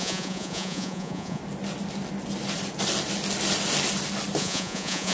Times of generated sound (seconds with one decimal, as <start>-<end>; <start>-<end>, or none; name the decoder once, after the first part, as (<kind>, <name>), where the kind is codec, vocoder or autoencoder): 0.0-1.4 (vocoder, Vocos); 4.4-5.1